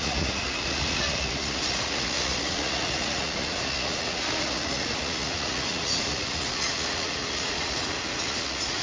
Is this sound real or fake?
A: fake